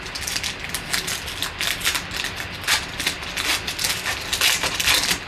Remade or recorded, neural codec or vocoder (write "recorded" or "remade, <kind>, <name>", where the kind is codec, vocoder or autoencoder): recorded